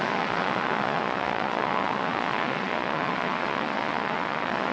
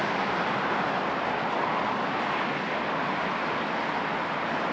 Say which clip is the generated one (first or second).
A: first